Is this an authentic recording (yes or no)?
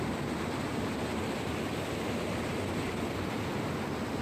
yes